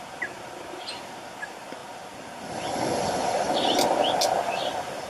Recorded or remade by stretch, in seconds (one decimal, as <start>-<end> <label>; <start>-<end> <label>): 0.0-5.1 recorded